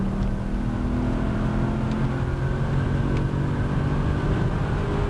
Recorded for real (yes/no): yes